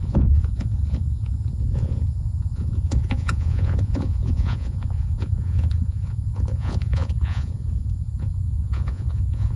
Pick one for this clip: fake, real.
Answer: fake